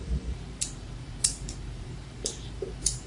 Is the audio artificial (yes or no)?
yes